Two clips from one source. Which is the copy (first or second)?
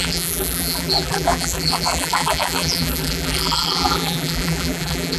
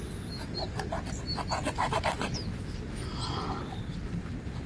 first